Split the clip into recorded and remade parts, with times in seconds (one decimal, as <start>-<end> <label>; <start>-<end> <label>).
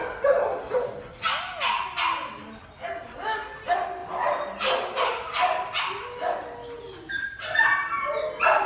0.0-8.7 recorded